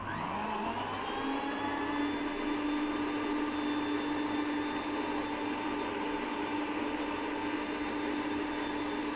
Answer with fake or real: real